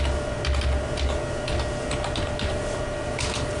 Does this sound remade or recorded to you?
recorded